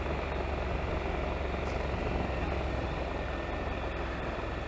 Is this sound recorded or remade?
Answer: recorded